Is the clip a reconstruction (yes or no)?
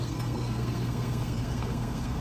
yes